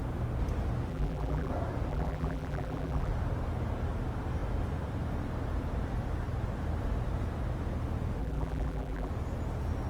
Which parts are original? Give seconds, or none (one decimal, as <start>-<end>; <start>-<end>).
0.0-0.9; 1.5-1.9; 3.1-8.2; 9.1-9.9